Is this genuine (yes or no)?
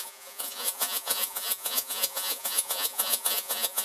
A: no